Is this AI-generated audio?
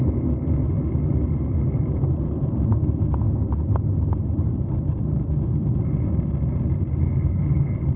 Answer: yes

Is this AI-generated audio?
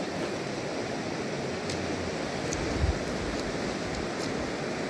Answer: no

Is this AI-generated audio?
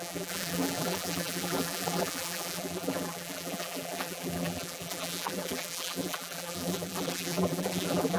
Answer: yes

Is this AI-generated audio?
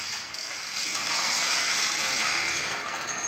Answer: yes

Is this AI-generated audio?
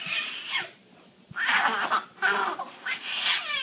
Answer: no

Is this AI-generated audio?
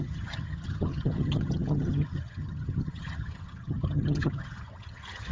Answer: yes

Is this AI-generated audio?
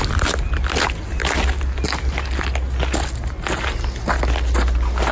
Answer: no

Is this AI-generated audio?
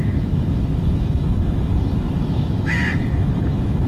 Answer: yes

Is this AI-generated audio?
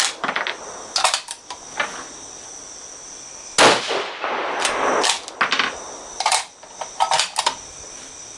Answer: no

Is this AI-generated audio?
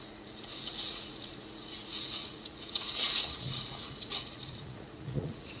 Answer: yes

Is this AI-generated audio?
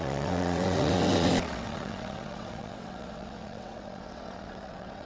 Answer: yes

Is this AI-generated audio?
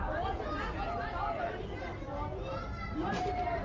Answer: no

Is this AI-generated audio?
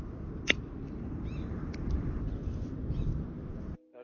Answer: no